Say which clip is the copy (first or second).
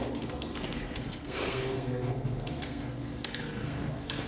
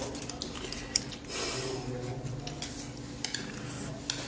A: first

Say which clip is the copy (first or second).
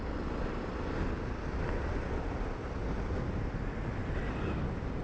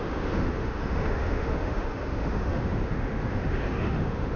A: second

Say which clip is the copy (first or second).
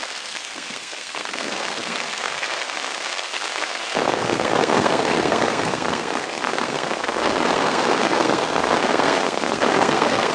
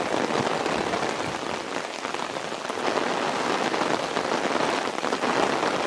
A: first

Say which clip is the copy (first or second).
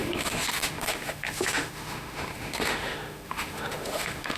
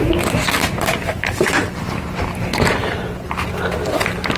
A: first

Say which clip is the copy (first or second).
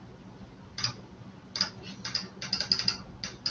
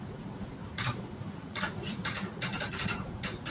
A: second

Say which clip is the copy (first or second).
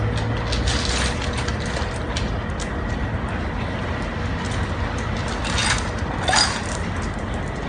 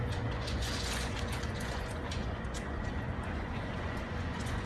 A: second